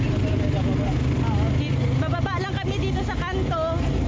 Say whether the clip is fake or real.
real